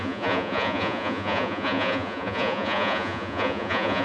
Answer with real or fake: fake